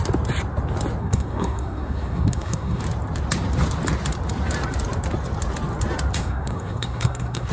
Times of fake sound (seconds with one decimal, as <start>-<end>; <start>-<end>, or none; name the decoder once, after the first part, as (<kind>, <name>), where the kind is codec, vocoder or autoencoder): 1.0-2.8 (codec, SNAC); 6.2-7.5